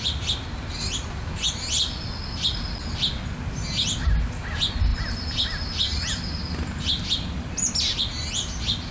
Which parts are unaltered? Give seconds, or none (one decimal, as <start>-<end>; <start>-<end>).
0.0-8.9